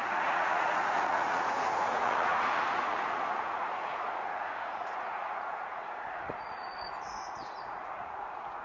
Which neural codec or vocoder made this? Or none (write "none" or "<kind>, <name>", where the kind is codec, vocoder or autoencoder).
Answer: vocoder, Vocos